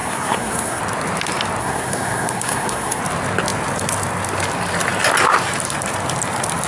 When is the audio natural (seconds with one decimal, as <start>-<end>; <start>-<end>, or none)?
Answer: 0.8-1.6; 3.0-6.7